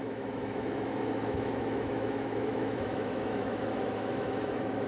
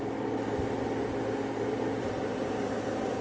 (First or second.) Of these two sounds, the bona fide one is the second